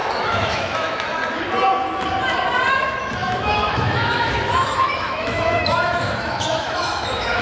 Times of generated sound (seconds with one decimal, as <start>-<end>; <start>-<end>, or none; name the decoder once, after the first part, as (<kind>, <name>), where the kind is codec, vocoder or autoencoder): 0.0-1.2 (autoencoder, DAC-VAE); 2.7-7.4